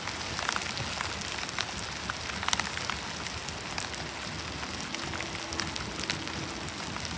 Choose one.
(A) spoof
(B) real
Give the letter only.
B